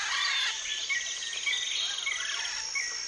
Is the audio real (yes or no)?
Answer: yes